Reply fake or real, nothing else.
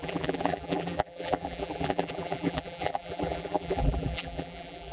fake